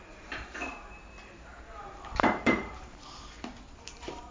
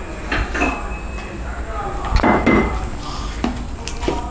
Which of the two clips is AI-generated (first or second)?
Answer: first